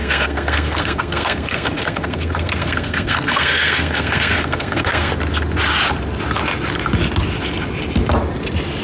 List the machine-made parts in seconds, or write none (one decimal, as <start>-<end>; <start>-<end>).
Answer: 0.0-5.1